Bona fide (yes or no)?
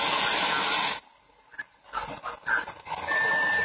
yes